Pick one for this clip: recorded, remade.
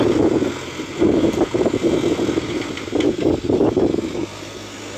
recorded